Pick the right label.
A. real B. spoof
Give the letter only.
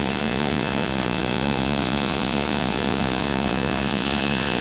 B